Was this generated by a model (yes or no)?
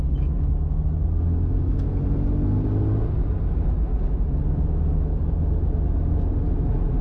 no